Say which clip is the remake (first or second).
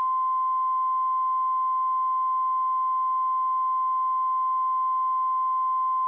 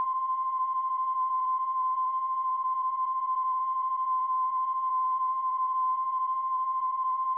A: second